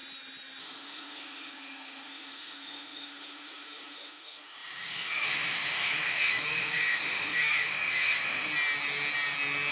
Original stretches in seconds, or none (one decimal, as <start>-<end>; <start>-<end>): 0.0-0.6; 8.5-9.7